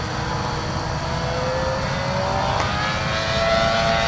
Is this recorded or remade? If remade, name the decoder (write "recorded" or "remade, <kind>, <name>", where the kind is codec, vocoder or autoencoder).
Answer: recorded